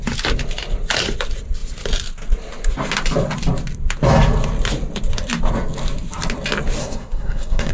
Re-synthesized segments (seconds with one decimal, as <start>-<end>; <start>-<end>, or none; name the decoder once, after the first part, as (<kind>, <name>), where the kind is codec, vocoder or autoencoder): 6.8-7.7 (codec, SNAC)